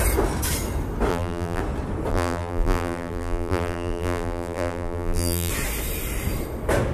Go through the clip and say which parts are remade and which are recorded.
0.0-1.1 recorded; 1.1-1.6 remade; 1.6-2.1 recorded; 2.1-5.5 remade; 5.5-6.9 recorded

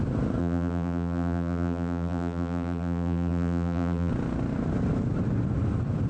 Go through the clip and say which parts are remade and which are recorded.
0.0-0.4 recorded; 0.4-4.1 remade; 4.1-6.1 recorded

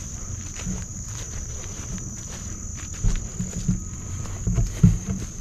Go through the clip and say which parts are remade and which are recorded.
0.0-2.7 remade; 2.7-4.8 recorded; 4.8-5.4 remade

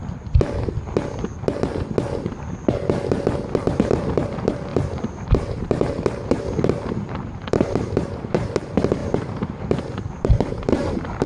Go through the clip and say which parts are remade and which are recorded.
0.0-3.6 recorded; 3.6-11.3 remade

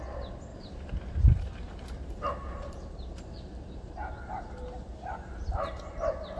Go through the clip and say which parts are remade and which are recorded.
0.0-0.5 recorded; 0.5-3.9 remade; 3.9-6.4 recorded

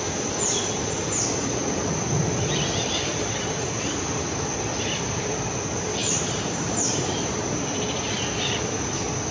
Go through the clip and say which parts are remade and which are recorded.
0.0-3.1 recorded; 3.1-3.9 remade; 3.9-6.0 recorded; 6.0-7.6 remade; 7.6-9.3 recorded